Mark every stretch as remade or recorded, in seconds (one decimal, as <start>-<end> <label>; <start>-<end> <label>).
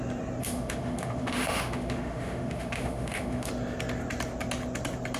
0.0-0.4 recorded; 0.4-3.5 remade; 3.5-5.2 recorded